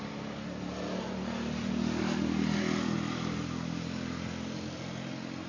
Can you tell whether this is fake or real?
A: real